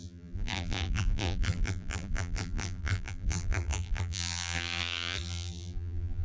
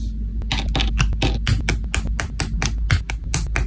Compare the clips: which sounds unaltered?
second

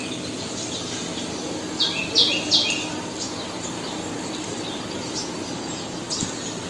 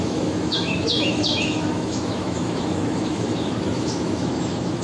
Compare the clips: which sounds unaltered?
first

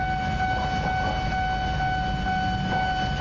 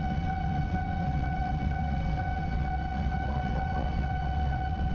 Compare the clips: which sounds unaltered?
first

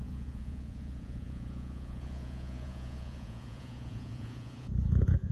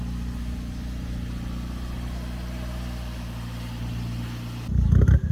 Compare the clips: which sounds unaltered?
second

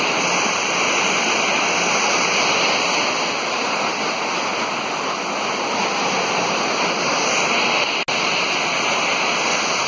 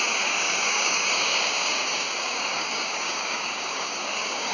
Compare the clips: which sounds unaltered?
first